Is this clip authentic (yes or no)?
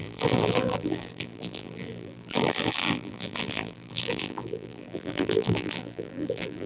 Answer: no